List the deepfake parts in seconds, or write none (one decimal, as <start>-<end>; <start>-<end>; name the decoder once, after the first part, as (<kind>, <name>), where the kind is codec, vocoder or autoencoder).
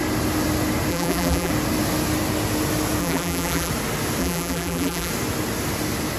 0.9-1.5 (vocoder, BigVGAN v2); 3.0-3.7; 4.2-5.1